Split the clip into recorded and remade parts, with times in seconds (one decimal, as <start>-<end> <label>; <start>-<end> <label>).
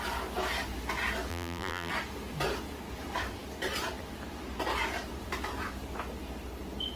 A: 0.0-1.3 recorded; 1.3-1.9 remade; 1.9-7.0 recorded